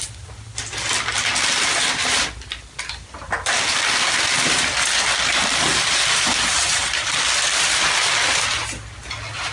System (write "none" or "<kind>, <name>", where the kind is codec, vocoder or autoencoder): none